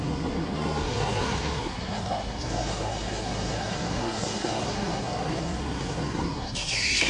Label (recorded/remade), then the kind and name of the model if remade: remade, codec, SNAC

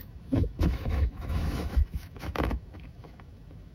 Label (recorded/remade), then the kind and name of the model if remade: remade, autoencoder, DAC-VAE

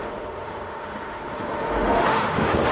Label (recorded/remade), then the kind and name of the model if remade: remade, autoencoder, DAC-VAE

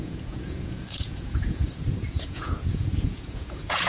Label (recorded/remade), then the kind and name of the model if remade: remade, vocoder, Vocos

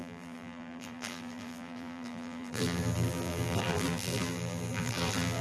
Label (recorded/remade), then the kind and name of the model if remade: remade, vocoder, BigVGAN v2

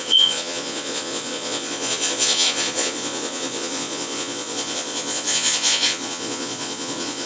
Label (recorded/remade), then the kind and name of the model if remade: remade, vocoder, Vocos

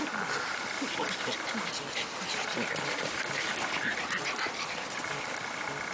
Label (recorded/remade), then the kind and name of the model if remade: recorded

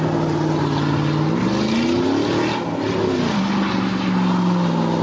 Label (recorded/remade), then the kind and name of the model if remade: recorded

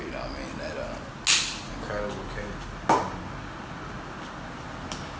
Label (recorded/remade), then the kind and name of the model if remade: recorded